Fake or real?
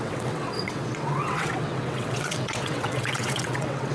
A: fake